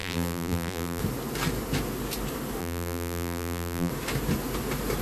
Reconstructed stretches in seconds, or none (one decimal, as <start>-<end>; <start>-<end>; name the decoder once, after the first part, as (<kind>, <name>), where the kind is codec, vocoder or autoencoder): 0.0-1.0 (vocoder, BigVGAN v2); 2.6-3.9